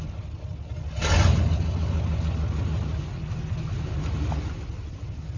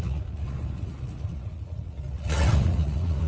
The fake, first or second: second